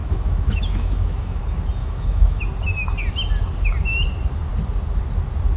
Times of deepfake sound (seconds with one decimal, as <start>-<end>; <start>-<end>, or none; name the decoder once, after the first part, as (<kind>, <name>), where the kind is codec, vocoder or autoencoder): 0.0-1.4 (autoencoder, DAC-VAE); 1.8-2.4